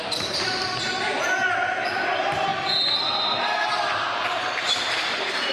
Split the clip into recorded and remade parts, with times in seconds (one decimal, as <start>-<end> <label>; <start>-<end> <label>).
0.0-2.5 remade; 2.5-3.0 recorded; 3.0-5.5 remade